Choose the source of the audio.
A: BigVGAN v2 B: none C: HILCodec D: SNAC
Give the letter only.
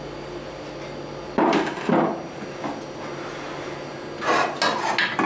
B